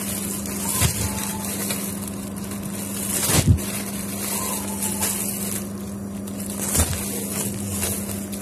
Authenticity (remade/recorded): recorded